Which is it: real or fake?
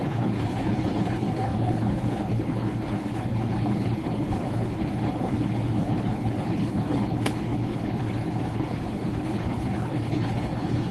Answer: fake